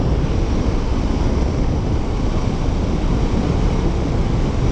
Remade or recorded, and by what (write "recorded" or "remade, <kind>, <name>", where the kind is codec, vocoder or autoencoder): recorded